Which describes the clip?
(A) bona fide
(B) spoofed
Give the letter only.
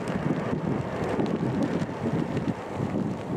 A